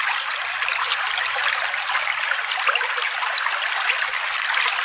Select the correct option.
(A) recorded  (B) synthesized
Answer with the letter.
A